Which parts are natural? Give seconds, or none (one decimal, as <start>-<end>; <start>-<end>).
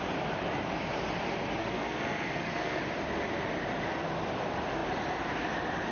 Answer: 0.0-1.6; 2.8-5.9